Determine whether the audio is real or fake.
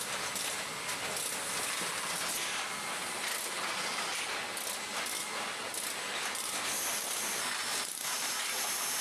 real